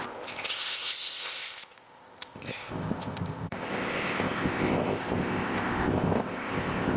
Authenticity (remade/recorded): remade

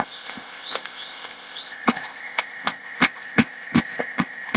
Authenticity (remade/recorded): remade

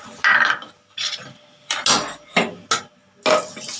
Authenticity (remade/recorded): recorded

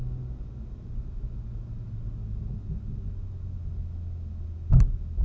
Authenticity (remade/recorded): recorded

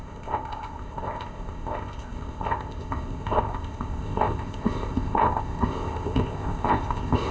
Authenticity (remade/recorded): remade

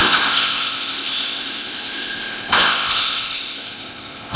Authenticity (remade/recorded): remade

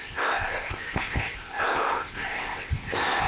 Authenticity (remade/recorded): remade